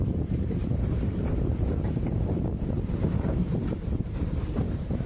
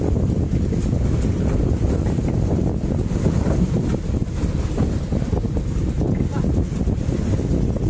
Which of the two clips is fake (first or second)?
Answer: first